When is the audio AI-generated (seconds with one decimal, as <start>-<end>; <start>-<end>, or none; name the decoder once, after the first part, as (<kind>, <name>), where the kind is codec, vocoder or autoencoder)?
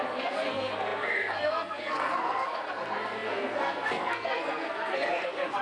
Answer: 0.0-5.6 (codec, SNAC)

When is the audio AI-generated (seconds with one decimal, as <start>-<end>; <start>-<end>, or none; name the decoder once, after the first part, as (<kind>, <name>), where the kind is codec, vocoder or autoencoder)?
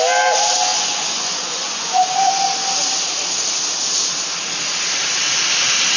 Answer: 0.7-2.0 (vocoder, Vocos)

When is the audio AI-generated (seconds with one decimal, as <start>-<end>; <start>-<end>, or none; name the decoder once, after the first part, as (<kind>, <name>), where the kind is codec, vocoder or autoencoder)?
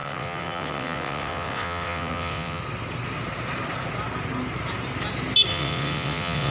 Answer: 0.0-2.6 (vocoder, WaveNeXt); 5.5-6.5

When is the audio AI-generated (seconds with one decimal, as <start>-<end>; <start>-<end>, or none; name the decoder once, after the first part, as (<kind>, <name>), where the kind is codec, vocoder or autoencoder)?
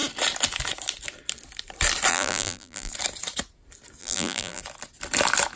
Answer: 2.1-2.9 (vocoder, BigVGAN v2); 4.0-4.6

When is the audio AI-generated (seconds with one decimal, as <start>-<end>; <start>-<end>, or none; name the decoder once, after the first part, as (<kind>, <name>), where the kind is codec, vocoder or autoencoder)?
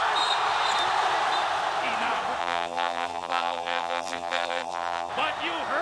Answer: 2.4-5.1 (vocoder, BigVGAN v2)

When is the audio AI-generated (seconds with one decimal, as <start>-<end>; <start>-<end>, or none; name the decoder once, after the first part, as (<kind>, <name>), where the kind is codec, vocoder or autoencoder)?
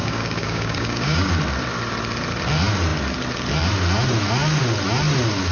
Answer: 0.0-1.3 (codec, DAC)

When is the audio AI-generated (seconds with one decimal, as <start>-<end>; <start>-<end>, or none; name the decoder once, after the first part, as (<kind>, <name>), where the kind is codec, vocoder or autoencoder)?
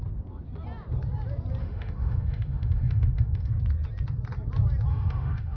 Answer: 1.6-3.6 (autoencoder, DAC-VAE); 4.9-5.6